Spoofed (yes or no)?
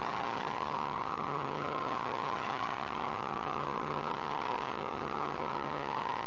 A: yes